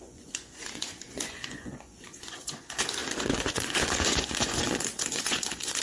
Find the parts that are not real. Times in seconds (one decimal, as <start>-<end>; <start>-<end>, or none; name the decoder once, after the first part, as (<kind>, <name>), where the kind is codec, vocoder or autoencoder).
0.0-5.8 (vocoder, Vocos)